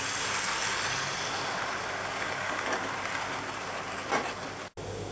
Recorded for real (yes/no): yes